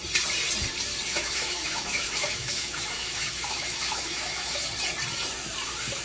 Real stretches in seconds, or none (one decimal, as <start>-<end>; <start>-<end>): 0.0-1.1; 4.6-6.0